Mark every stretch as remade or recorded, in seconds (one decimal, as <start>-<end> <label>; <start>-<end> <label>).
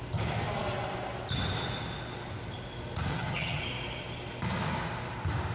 0.0-3.1 recorded; 3.1-3.6 remade; 3.6-5.5 recorded